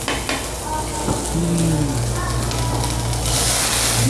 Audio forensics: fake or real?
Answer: real